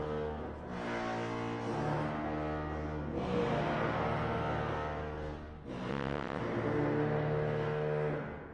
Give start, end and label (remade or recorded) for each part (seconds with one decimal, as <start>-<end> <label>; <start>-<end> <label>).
0.0-5.9 recorded; 5.9-6.4 remade; 6.4-8.5 recorded